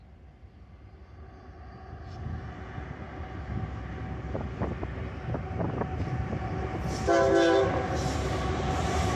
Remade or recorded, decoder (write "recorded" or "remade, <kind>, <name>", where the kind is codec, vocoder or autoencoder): recorded